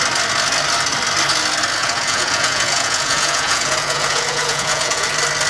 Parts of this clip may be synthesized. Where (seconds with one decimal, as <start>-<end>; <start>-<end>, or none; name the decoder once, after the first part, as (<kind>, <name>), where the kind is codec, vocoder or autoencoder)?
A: 1.8-5.1 (vocoder, Vocos)